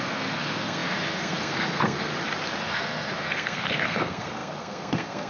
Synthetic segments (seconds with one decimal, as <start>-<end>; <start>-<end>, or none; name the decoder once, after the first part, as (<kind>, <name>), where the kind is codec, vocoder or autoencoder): 0.0-2.1 (codec, SNAC); 2.6-5.3